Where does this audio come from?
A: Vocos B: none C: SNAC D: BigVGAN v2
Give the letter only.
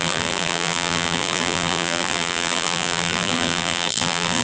D